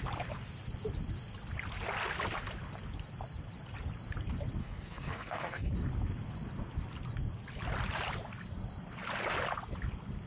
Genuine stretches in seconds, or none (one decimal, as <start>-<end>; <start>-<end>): 0.0-4.6; 5.7-10.3